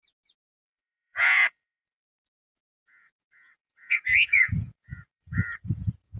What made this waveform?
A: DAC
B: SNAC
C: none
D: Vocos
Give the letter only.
D